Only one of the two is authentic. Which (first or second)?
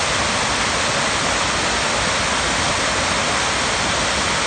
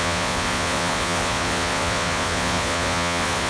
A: first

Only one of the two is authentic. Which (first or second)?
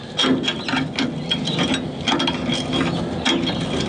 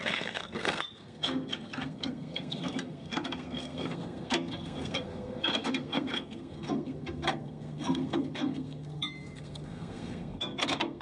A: first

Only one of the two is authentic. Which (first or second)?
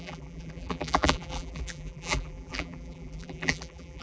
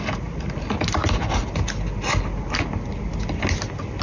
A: second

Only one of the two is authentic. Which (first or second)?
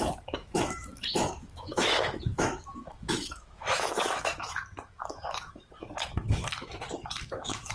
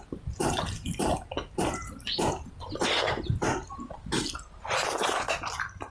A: second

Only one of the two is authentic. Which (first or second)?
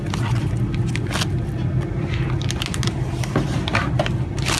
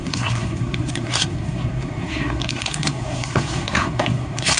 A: first